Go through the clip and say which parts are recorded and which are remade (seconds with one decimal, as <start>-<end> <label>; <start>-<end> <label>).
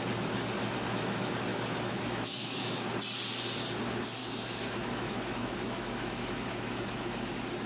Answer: 0.0-1.5 recorded; 1.5-2.9 remade; 2.9-4.2 recorded; 4.2-7.3 remade; 7.3-7.7 recorded